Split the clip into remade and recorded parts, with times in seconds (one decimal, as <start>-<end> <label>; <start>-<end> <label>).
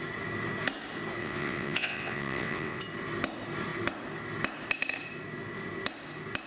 0.0-1.2 recorded; 1.2-2.8 remade; 2.8-6.5 recorded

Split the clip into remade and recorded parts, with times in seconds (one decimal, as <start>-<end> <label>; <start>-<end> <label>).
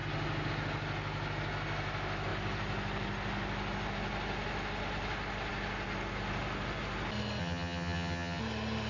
0.0-7.4 recorded; 7.4-8.4 remade; 8.4-8.9 recorded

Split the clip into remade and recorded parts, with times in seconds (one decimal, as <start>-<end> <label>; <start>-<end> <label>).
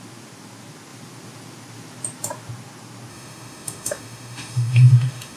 0.0-3.1 recorded; 3.1-5.4 remade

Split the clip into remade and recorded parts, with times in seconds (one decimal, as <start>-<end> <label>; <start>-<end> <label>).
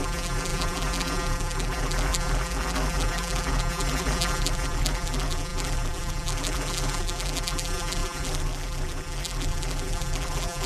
0.0-10.7 remade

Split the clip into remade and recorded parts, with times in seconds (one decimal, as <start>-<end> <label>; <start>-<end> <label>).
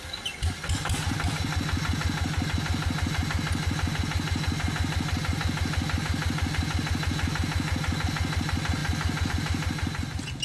0.0-10.4 recorded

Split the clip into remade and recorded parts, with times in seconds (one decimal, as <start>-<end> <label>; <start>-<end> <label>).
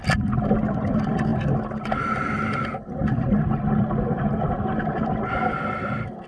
0.0-6.3 recorded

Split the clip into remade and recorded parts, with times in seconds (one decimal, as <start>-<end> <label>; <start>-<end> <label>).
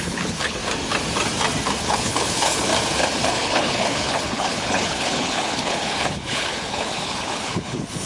0.0-0.6 remade; 0.6-1.8 recorded; 1.8-2.7 remade; 2.7-3.2 recorded; 3.2-8.1 remade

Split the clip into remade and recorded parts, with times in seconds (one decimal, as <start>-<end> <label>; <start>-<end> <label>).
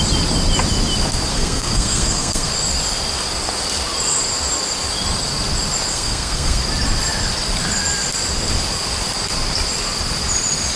0.0-1.3 recorded; 1.3-2.5 remade; 2.5-5.9 recorded; 5.9-6.6 remade; 6.6-10.8 recorded